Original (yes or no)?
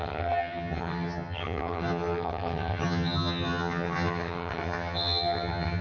no